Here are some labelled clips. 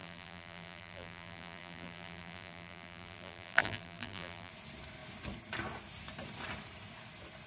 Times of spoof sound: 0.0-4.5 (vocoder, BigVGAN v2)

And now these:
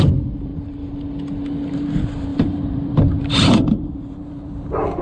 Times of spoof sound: 0.0-0.5 (vocoder, BigVGAN v2); 1.7-5.0